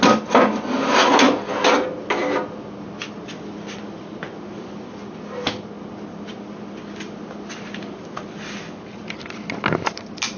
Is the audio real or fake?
real